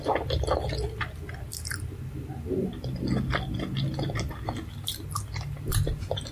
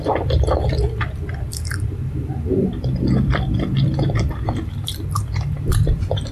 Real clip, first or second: first